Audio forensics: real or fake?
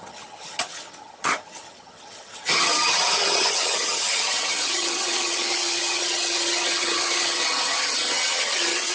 fake